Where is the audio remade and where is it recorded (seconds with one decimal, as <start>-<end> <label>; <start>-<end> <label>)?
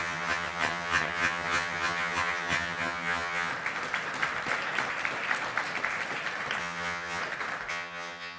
0.0-3.5 remade; 3.5-6.6 recorded; 6.6-7.2 remade; 7.2-7.7 recorded; 7.7-8.4 remade